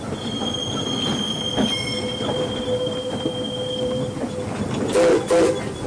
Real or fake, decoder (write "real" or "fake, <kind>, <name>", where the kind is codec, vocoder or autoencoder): real